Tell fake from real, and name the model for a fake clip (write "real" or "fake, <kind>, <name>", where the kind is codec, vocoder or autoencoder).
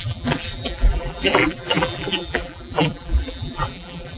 fake, vocoder, BigVGAN v2